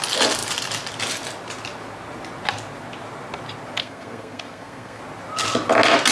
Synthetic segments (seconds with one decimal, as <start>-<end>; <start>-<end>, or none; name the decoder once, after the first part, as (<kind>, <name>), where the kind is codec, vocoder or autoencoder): 3.8-5.0 (codec, SNAC)